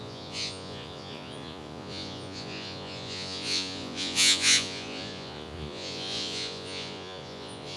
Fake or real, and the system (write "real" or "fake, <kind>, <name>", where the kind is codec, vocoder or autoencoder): fake, vocoder, Vocos